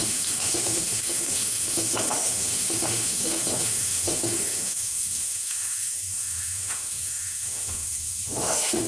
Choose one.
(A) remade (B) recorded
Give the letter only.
A